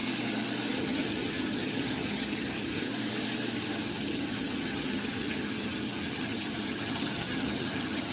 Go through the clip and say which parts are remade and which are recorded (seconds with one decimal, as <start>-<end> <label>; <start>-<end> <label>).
0.0-0.8 recorded; 0.8-2.9 remade; 2.9-3.9 recorded; 3.9-8.1 remade